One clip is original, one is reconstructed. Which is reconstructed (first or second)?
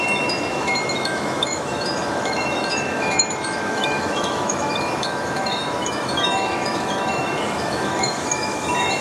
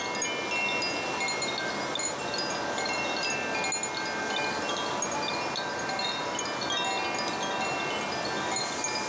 first